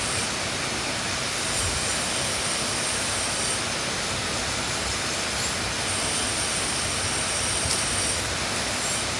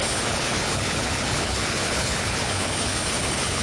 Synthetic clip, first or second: second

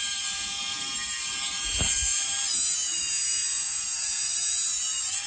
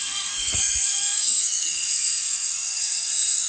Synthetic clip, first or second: second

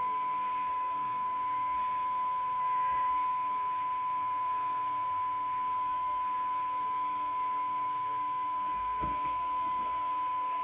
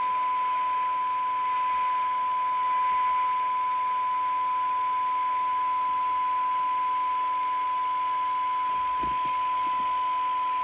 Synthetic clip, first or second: first